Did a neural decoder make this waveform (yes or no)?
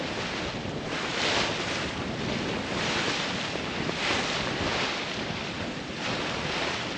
no